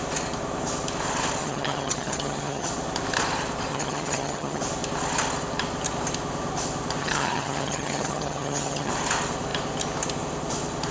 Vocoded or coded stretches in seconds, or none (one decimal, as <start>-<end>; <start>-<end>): 1.4-2.7; 3.7-4.6; 7.0-8.9